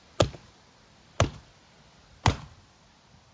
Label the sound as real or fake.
real